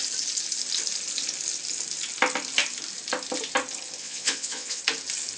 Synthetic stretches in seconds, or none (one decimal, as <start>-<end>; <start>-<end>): 4.0-4.8